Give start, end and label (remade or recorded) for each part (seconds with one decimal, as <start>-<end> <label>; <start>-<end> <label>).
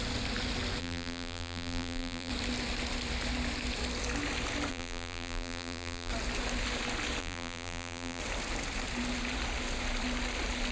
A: 0.0-0.8 recorded; 0.8-2.3 remade; 2.3-4.7 recorded; 4.7-6.1 remade; 6.1-7.2 recorded; 7.2-8.2 remade; 8.2-10.7 recorded